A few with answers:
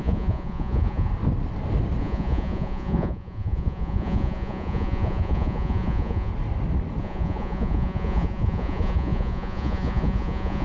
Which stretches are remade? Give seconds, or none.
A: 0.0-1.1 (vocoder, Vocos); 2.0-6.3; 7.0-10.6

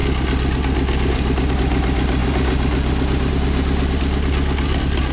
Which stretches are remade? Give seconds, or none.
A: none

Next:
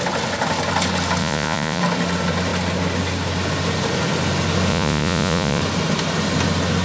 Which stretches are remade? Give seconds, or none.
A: 1.2-1.8 (vocoder, Vocos); 4.7-5.6